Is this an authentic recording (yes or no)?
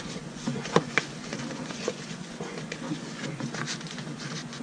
no